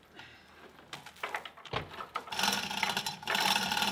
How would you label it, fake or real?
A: real